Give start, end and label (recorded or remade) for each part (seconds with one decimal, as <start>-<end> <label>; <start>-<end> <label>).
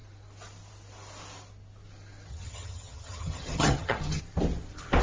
0.0-2.3 recorded; 2.3-4.2 remade; 4.2-5.0 recorded